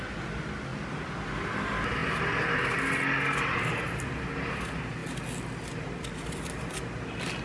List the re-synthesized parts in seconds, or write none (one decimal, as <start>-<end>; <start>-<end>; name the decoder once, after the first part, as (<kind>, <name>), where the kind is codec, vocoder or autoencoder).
none